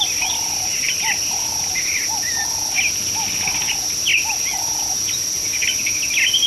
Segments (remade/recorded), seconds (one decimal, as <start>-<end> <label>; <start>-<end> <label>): 0.0-6.5 recorded